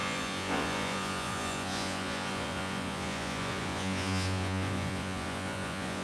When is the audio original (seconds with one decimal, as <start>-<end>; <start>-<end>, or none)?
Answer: none